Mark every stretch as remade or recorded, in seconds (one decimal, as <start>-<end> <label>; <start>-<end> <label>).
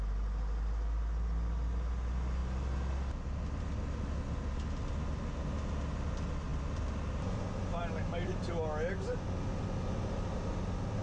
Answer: 0.0-11.0 recorded